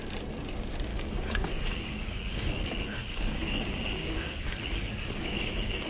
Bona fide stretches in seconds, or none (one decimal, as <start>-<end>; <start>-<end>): 0.0-0.9; 2.6-3.0